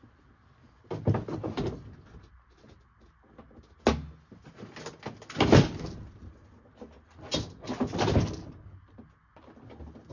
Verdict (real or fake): real